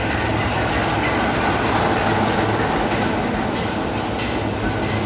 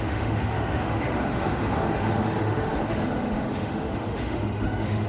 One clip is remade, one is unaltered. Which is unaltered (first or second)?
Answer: first